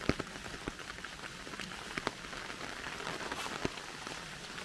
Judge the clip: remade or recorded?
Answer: recorded